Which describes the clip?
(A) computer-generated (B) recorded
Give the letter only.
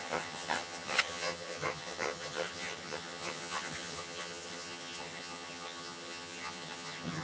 A